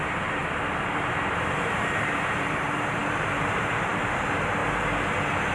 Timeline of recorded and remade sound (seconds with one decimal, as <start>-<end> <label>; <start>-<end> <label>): 0.0-0.4 remade; 0.4-1.3 recorded; 1.3-4.6 remade; 4.6-5.5 recorded